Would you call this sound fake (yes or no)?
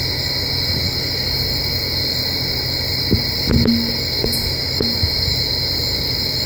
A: no